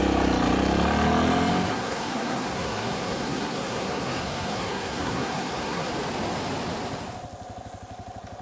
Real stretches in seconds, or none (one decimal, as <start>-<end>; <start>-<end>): 0.0-1.7; 5.9-8.4